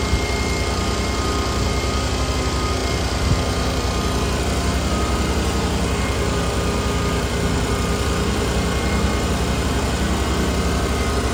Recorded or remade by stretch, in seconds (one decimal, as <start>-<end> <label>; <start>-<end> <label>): 0.0-11.3 recorded